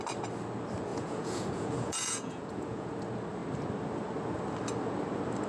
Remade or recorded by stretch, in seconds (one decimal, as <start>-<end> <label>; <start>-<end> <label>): 0.0-0.9 recorded; 0.9-2.9 remade; 2.9-5.5 recorded